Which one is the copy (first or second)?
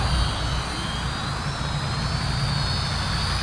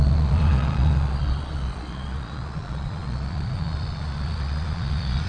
second